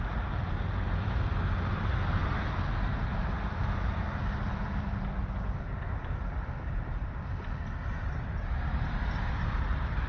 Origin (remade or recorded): recorded